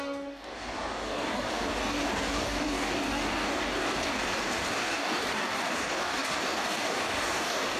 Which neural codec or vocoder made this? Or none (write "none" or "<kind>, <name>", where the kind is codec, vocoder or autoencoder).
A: codec, DAC